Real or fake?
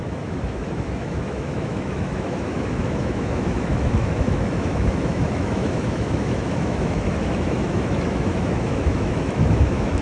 fake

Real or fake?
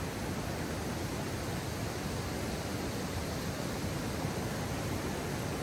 real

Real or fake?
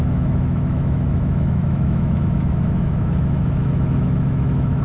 fake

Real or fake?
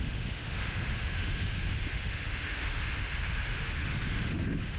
fake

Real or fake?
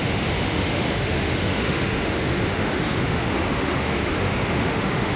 fake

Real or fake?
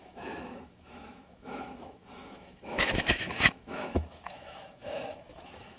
fake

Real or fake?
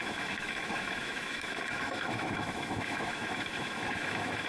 fake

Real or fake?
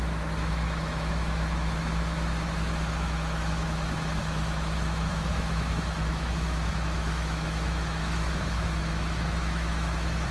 fake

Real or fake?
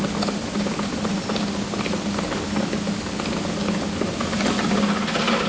real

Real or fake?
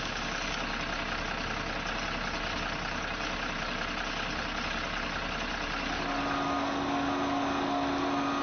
real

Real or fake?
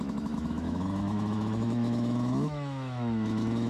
fake